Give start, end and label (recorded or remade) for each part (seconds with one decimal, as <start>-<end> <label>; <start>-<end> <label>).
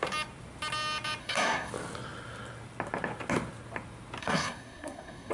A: 0.0-1.2 recorded; 1.2-1.7 remade; 1.7-4.2 recorded; 4.2-5.3 remade